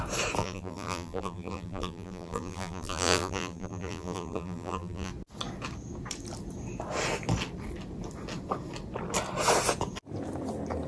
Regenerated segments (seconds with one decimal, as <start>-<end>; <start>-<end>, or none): 0.4-5.1